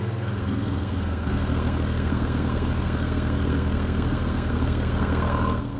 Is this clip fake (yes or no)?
yes